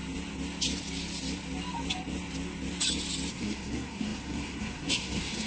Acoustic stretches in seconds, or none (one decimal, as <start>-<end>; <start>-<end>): 0.0-3.3